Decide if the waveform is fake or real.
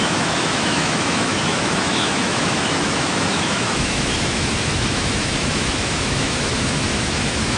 fake